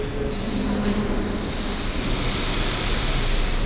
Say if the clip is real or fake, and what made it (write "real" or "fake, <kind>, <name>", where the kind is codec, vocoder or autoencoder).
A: real